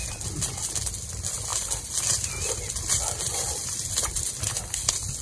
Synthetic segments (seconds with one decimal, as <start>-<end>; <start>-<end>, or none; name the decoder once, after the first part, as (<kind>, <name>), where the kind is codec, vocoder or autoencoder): none